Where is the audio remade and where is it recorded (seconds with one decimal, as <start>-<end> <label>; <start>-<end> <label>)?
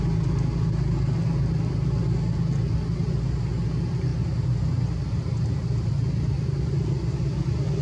0.0-7.8 recorded